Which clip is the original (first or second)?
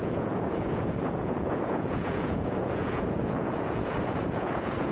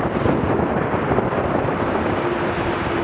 second